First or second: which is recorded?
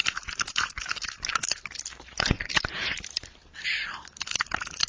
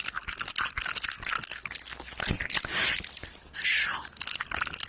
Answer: second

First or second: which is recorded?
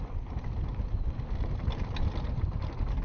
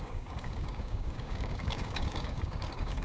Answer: first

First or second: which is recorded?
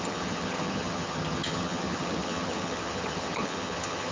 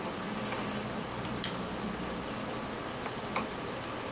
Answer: second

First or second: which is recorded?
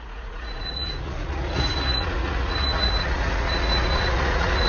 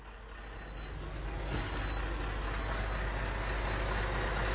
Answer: second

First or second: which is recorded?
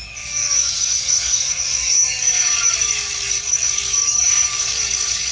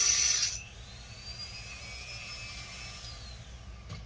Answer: second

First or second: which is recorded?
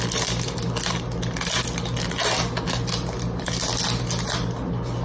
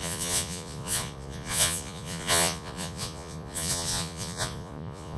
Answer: first